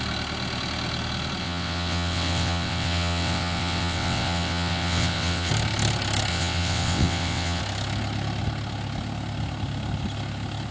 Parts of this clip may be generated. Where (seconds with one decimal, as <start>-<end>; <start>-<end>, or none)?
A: 1.4-5.5; 6.3-7.6